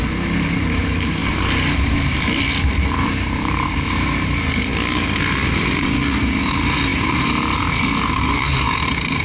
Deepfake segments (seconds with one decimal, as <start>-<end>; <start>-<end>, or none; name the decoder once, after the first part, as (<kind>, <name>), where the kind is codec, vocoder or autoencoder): 0.0-1.2 (vocoder, BigVGAN v2); 2.7-4.7; 6.4-9.2